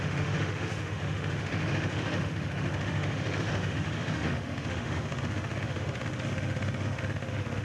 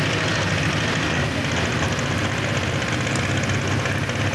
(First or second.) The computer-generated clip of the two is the first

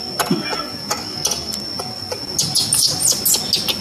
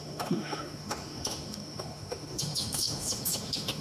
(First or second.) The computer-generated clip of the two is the second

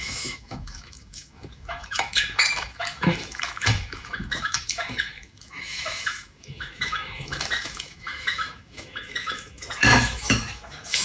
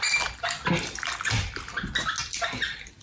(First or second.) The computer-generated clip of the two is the first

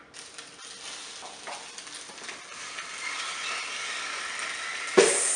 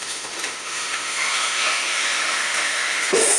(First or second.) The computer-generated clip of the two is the second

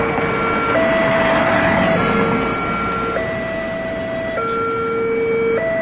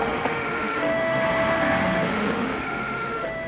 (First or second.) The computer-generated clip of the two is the second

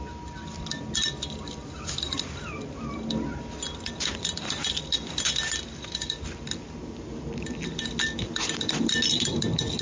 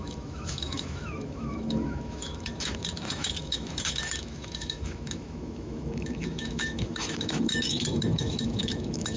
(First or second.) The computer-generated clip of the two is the second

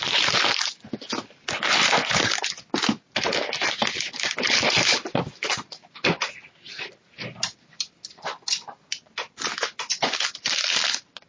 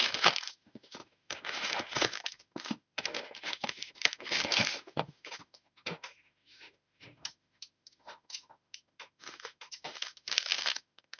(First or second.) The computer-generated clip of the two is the second